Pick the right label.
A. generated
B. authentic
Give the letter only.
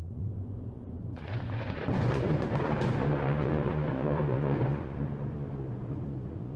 A